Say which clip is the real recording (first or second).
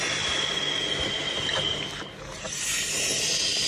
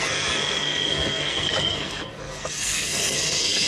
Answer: first